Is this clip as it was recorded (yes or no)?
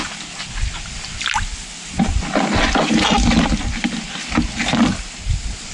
yes